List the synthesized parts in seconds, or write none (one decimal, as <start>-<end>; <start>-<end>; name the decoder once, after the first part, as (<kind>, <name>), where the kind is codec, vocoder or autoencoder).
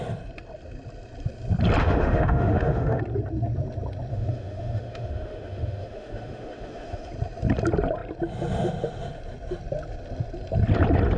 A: 1.8-3.0 (autoencoder, DAC-VAE); 4.1-7.1